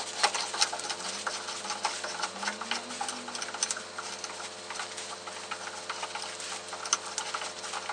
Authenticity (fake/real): real